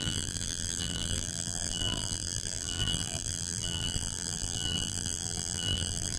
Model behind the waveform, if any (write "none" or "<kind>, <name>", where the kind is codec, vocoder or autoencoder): vocoder, BigVGAN v2